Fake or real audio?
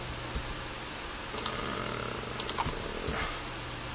real